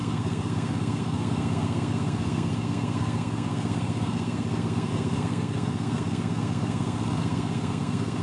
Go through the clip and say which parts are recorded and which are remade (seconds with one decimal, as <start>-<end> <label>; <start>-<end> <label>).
0.0-8.2 remade